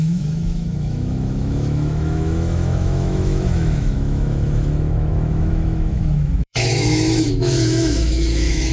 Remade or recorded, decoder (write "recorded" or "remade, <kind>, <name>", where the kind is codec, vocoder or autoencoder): remade, autoencoder, DAC-VAE